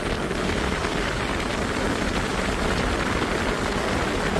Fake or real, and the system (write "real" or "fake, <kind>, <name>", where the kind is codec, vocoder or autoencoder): real